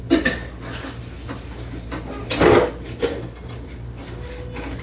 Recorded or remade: recorded